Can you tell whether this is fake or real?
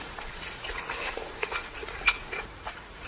fake